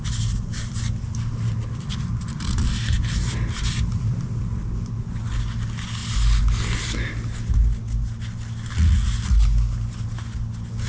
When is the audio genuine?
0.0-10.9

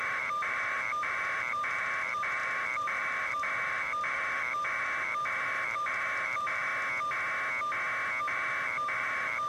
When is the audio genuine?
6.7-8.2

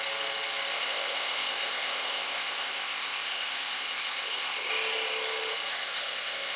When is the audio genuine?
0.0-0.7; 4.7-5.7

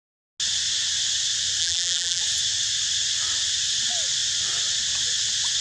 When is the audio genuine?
0.0-1.6; 2.2-5.6